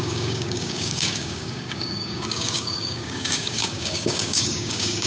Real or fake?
fake